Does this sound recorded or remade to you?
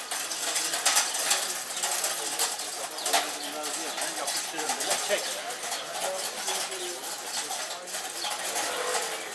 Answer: recorded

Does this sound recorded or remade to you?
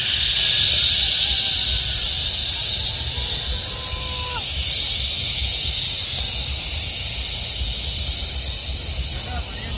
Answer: recorded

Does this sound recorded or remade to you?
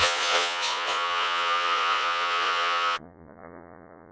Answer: remade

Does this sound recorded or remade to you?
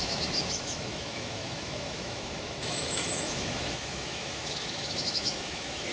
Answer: remade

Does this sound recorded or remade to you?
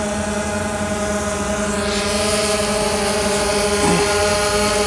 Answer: recorded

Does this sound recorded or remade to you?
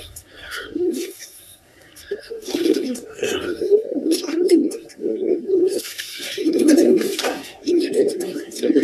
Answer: remade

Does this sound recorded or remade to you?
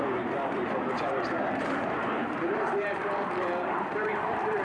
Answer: remade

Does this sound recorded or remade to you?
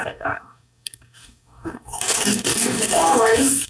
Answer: remade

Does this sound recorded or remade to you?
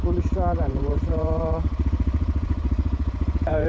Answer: remade